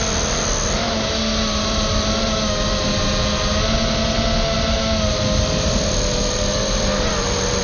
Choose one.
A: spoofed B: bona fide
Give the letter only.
B